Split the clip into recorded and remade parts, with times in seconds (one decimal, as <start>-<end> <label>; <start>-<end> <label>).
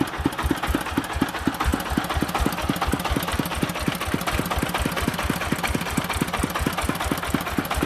0.0-7.9 recorded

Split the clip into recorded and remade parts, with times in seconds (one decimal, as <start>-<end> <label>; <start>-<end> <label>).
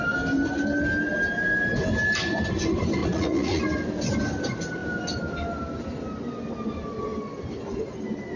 0.0-3.0 recorded; 3.0-3.6 remade; 3.6-8.4 recorded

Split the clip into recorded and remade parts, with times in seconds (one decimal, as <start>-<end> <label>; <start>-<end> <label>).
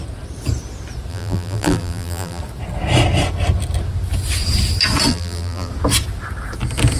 0.0-1.1 recorded; 1.1-2.4 remade; 2.4-5.1 recorded; 5.1-5.7 remade; 5.7-7.0 recorded